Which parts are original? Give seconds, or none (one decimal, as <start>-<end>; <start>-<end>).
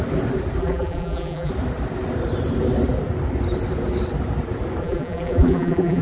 0.0-0.6; 1.5-4.8